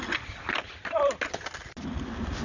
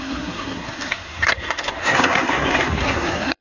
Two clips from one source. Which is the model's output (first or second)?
second